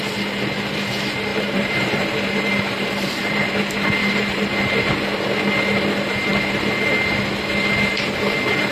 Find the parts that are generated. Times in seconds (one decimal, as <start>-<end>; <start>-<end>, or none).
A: 1.3-3.5; 4.0-4.8